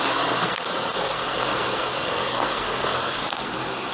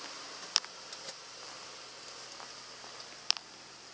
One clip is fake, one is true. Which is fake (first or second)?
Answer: first